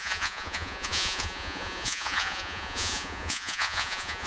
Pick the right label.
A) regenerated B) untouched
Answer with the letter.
A